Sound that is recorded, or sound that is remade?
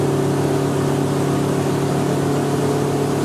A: recorded